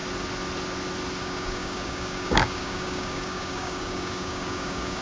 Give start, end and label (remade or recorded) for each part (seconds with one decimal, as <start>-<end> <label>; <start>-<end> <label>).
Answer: 0.0-1.2 recorded; 1.2-5.0 remade